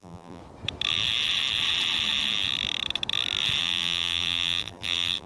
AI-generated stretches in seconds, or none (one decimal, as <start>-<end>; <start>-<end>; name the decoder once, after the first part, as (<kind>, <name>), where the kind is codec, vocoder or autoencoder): 0.0-0.4 (vocoder, BigVGAN v2); 3.6-5.3